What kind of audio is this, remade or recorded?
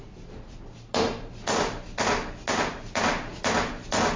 recorded